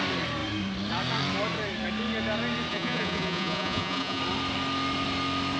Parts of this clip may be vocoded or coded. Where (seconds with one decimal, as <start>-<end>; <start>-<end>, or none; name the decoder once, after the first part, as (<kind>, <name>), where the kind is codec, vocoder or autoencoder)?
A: 2.7-4.2 (vocoder, Vocos)